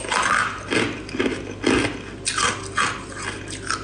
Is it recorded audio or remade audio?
recorded